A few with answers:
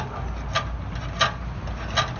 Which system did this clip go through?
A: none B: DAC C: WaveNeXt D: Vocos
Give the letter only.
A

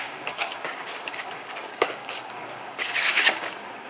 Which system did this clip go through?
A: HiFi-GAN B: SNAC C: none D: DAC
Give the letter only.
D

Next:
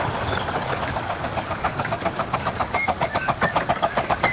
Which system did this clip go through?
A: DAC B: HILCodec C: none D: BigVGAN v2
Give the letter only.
A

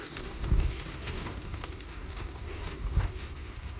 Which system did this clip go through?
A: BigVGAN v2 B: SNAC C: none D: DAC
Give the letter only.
D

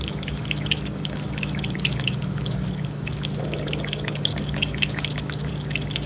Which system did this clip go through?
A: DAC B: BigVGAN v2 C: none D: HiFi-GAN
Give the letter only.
A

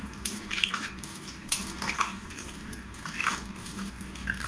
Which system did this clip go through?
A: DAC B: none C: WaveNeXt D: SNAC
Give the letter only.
A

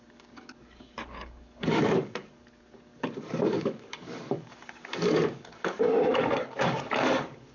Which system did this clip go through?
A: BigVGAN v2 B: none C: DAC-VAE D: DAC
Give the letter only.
D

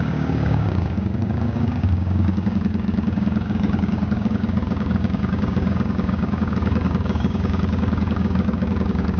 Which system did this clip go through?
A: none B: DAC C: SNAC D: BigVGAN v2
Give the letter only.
B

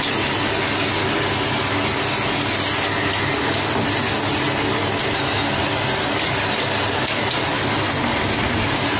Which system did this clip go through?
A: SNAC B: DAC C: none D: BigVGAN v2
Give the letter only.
C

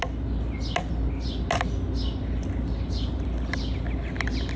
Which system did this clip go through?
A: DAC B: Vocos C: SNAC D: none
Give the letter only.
D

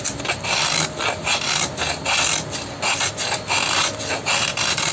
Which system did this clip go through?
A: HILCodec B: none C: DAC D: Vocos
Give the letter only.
B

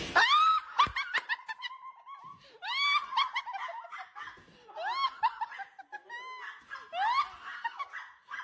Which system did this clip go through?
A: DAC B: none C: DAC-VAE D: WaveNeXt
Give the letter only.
B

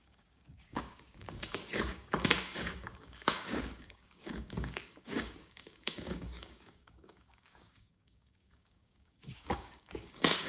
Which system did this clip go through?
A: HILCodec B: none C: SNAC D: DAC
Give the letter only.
D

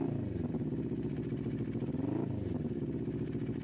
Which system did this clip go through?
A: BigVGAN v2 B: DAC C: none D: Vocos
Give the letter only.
C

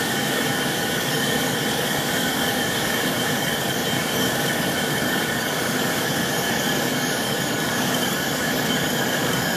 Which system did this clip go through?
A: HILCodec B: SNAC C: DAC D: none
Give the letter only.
C